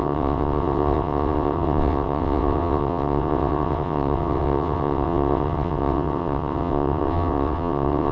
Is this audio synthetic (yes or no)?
yes